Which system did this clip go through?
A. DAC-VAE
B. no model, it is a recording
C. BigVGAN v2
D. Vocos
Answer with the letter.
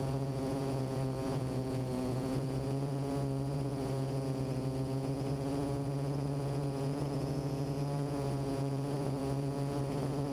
D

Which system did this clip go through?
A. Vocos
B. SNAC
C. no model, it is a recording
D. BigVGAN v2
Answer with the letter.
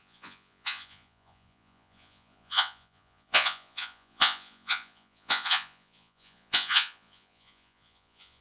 A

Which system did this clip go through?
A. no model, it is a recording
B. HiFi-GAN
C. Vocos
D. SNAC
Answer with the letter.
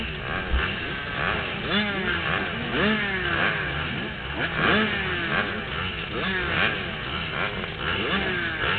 A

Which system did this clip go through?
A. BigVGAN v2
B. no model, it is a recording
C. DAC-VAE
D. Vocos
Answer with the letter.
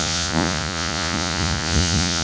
D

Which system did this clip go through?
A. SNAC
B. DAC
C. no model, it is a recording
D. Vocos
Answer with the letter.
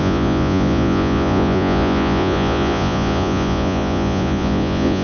D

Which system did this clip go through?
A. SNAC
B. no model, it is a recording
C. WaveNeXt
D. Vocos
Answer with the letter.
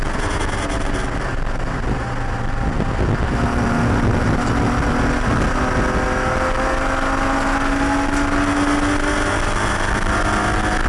B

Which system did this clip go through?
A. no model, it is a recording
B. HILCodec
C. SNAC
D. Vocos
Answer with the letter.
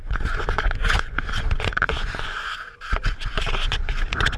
D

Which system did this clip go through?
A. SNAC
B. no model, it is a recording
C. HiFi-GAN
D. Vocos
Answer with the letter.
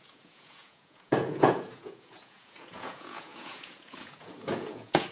D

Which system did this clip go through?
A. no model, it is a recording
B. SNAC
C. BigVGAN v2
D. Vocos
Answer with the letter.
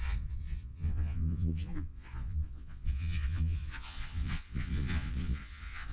D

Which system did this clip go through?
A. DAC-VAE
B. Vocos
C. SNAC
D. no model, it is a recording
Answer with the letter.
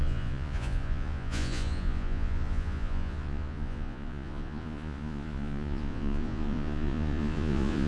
B